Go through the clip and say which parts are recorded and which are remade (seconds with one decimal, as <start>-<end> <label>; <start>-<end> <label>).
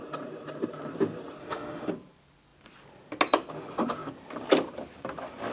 0.0-1.4 recorded; 1.4-1.9 remade; 1.9-5.5 recorded